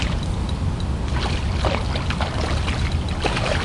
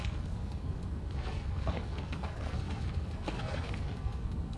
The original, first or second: first